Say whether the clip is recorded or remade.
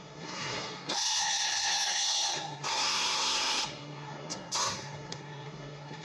remade